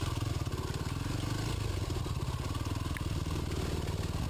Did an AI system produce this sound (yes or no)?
no